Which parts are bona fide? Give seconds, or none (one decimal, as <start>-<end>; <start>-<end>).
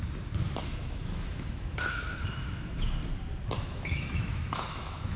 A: 0.0-0.7; 3.0-3.6